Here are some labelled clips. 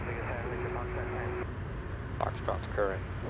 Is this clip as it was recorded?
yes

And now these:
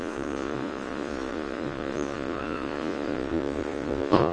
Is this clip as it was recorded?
no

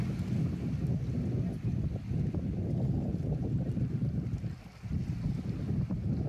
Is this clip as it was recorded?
yes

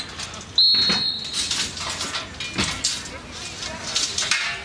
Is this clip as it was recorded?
yes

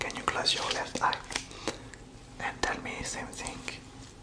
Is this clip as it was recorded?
yes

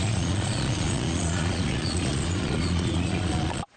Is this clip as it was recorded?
no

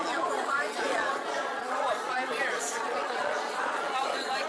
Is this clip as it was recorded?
no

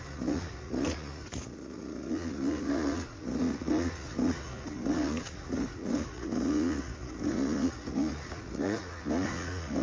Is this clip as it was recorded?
no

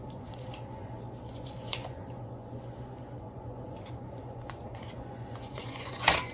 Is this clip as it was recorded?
no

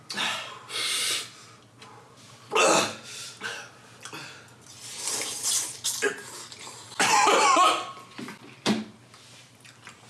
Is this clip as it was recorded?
yes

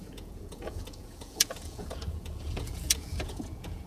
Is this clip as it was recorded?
no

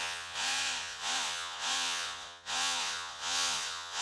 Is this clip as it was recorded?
no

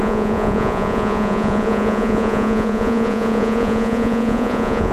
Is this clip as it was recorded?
no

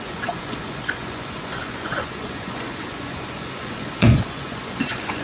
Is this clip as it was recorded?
no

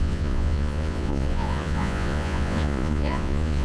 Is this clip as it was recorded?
no